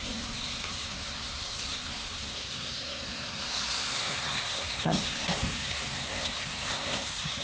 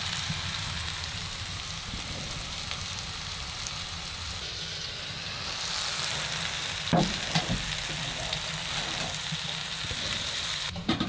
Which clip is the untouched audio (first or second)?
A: second